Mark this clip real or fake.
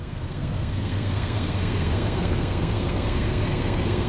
fake